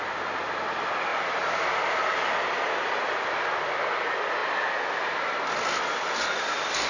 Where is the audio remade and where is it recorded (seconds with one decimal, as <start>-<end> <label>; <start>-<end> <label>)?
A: 0.0-1.1 recorded; 1.1-2.1 remade; 2.1-4.4 recorded; 4.4-5.1 remade; 5.1-6.9 recorded